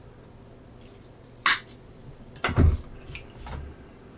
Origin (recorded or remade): recorded